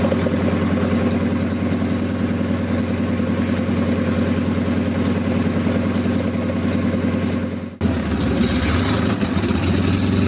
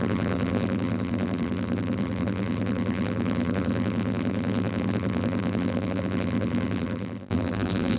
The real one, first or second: first